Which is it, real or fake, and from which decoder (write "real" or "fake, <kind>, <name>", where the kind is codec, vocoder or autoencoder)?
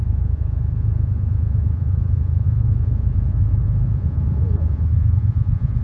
fake, vocoder, Vocos